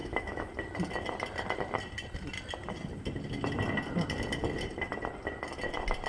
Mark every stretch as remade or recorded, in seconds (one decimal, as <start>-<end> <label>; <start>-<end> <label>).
0.0-0.5 remade; 0.5-6.1 recorded